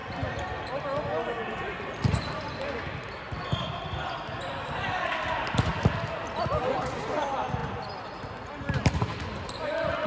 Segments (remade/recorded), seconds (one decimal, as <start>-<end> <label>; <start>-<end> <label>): 0.0-10.1 recorded

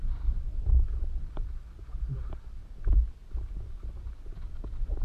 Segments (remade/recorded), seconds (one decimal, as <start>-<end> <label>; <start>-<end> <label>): 0.0-5.0 recorded